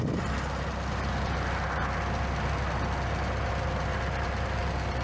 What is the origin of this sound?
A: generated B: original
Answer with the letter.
B